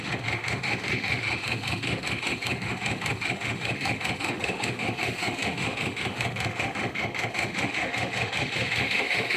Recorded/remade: remade